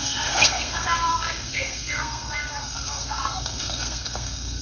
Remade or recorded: remade